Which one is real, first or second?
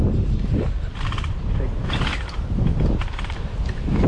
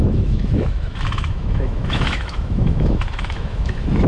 first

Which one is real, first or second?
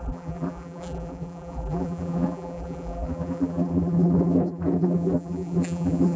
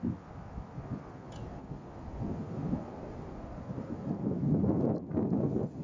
second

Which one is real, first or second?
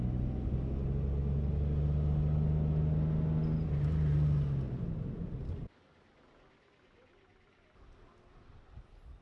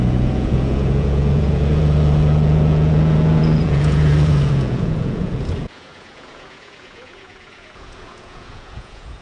first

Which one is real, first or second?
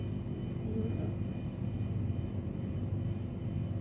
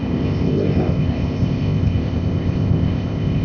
first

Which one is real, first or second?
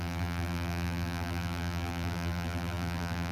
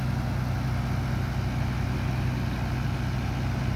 second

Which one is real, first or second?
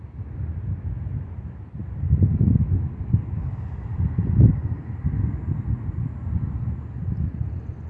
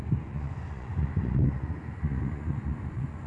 first